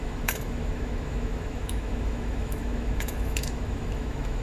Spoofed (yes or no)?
yes